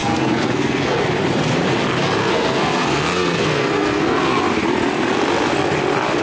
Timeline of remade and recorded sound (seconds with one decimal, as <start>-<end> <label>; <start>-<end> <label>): 0.0-1.0 remade; 1.0-2.2 recorded; 2.2-4.4 remade; 4.4-6.2 recorded